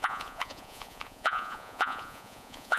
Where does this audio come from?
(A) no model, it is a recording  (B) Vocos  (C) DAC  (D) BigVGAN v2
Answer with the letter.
B